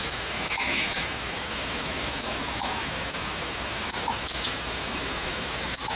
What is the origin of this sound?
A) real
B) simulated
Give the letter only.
B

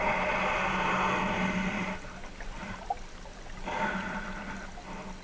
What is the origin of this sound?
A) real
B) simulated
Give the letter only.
A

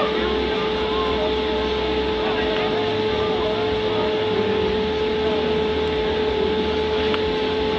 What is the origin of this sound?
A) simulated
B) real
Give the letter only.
B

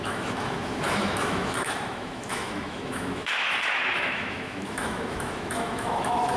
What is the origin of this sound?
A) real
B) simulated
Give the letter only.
B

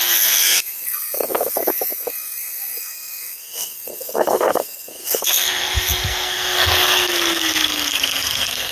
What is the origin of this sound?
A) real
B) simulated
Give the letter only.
B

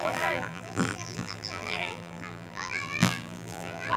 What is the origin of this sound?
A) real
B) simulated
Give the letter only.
B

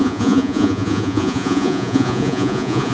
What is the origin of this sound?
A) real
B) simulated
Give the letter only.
B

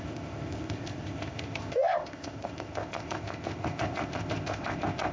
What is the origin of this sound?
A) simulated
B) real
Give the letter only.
A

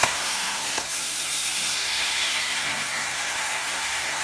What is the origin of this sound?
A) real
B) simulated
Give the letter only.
B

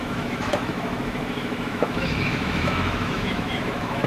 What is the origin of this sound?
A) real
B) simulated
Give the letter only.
B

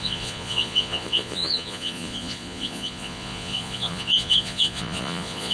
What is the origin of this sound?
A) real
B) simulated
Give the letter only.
B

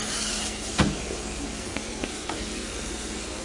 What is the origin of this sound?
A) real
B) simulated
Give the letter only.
B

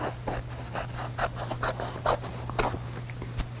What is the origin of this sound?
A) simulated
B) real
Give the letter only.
B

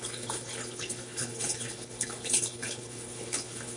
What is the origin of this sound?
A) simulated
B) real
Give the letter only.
A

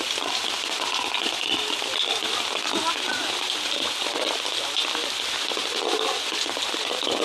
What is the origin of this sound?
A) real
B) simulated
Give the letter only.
A